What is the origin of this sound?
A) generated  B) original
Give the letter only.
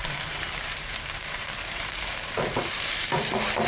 A